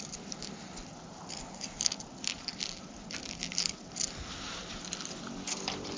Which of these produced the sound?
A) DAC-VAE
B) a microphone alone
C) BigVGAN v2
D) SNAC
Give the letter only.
B